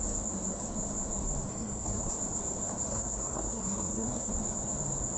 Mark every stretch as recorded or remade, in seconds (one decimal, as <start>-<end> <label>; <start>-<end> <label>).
0.0-1.5 recorded; 1.5-2.1 remade; 2.1-2.9 recorded; 2.9-4.3 remade; 4.3-5.2 recorded